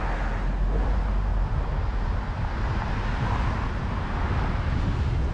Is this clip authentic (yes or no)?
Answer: yes